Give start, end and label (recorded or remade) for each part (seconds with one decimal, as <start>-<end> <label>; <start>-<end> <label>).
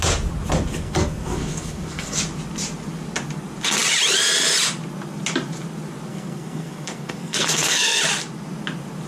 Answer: 0.0-0.7 recorded; 0.7-2.2 remade; 2.2-6.1 recorded; 6.1-8.0 remade; 8.0-9.1 recorded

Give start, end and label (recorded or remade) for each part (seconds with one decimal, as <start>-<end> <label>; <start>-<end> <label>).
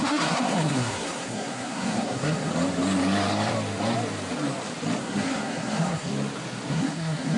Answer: 0.0-2.5 remade; 2.5-5.0 recorded; 5.0-6.1 remade; 6.1-6.7 recorded; 6.7-7.4 remade